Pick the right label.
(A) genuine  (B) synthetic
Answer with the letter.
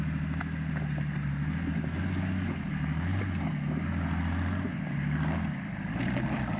A